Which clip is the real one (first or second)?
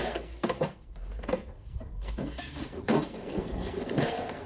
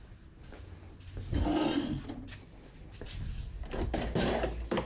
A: second